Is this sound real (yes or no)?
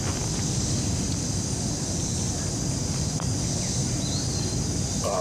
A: yes